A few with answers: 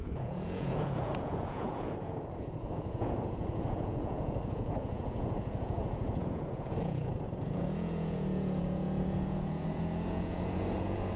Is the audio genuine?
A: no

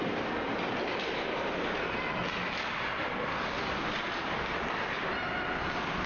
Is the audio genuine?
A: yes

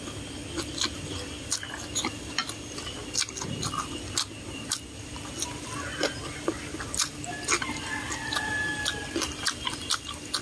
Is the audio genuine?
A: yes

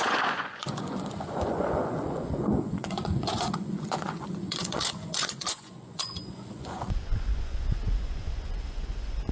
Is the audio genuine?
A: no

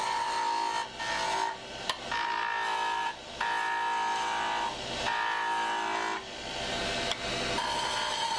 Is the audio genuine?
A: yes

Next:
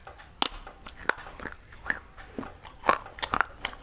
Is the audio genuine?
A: yes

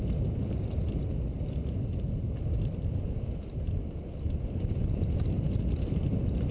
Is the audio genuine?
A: yes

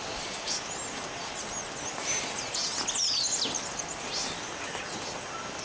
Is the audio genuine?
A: yes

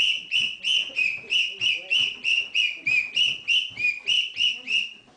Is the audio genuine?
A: yes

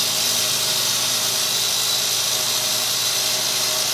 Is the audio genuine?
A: yes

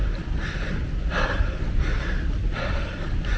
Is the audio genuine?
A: yes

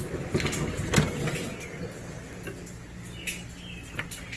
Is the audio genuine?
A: yes